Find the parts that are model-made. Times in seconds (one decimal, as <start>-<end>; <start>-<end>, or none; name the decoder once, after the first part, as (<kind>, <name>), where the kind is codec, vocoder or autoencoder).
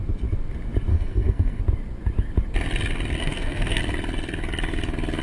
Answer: 0.9-1.6 (codec, SNAC); 3.2-3.8